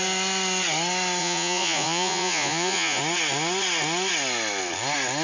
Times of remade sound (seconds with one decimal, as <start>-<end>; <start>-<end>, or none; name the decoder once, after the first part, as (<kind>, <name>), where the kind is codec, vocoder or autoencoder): 1.2-3.0 (vocoder, Vocos)